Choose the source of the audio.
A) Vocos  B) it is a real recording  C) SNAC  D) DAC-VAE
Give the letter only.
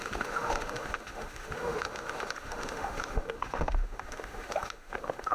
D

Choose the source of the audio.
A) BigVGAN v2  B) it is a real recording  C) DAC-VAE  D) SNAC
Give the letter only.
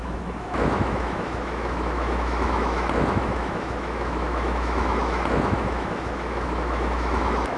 C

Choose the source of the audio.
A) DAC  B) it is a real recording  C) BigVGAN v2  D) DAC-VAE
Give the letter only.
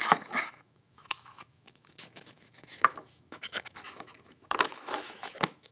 D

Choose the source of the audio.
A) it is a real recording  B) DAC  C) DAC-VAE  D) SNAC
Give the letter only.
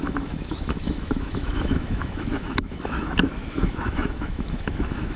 C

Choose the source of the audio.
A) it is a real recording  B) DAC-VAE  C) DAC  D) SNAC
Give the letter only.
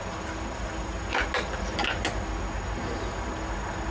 A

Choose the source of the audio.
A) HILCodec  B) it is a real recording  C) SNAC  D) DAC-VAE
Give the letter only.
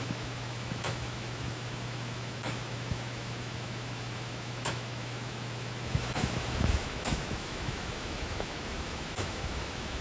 D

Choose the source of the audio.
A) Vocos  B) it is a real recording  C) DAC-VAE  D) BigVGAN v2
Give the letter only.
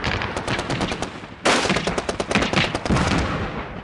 B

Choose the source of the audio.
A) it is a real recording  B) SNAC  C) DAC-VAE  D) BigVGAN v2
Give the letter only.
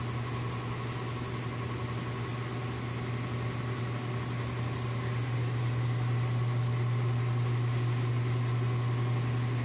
A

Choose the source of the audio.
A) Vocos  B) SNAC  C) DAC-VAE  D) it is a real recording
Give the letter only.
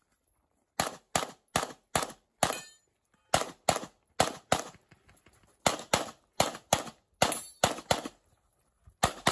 D